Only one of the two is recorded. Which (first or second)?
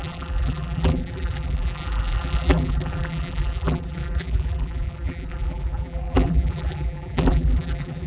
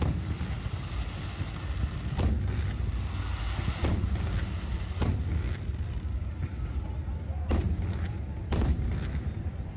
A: second